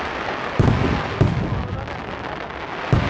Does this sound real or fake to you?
real